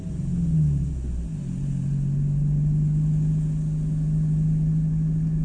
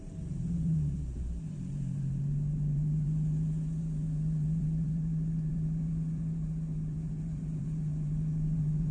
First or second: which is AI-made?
second